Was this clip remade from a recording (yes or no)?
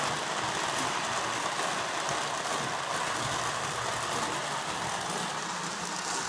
no